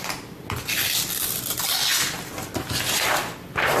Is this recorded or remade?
recorded